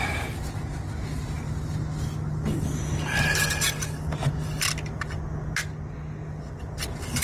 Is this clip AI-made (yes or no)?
no